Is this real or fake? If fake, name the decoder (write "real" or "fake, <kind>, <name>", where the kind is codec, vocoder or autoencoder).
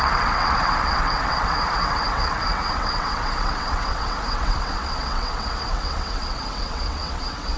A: fake, vocoder, WaveNeXt